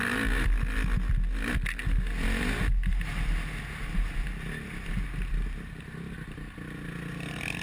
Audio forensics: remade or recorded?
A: recorded